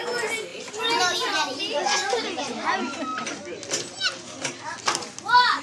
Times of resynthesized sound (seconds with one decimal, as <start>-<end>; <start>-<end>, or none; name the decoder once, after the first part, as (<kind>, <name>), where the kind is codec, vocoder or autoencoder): 0.5-1.6 (vocoder, BigVGAN v2)